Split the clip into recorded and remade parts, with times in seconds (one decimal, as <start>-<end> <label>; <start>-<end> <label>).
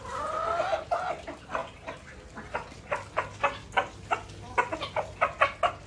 0.0-5.9 recorded